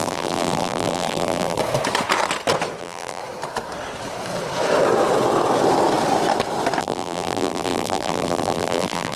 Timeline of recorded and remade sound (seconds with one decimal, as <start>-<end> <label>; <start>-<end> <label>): 0.0-1.6 remade; 1.6-2.8 recorded; 2.8-3.2 remade; 3.2-6.8 recorded; 6.8-9.2 remade